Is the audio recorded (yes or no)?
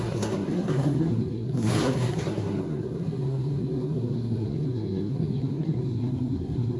no